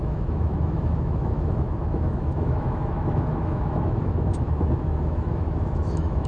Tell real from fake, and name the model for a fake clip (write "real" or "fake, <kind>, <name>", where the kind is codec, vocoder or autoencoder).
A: fake, autoencoder, DAC-VAE